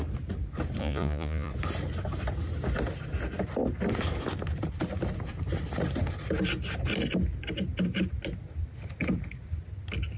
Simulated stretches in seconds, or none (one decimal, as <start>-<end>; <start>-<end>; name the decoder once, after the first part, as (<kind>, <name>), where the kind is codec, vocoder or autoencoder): 0.8-1.5 (vocoder, Vocos)